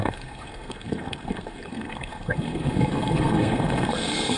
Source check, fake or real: fake